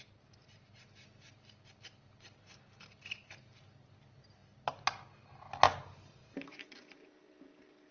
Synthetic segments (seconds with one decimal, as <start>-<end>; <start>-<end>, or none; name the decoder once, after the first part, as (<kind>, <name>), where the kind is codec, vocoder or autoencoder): none